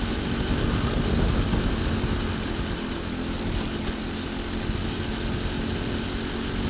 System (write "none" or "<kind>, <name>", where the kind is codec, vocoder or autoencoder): none